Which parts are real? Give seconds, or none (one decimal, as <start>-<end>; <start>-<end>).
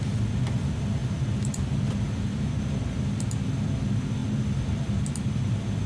0.0-5.9